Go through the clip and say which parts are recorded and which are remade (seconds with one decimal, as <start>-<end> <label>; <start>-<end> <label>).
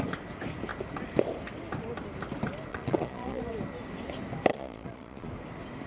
0.0-2.7 recorded; 2.7-3.4 remade; 3.4-4.5 recorded; 4.5-5.3 remade; 5.3-5.9 recorded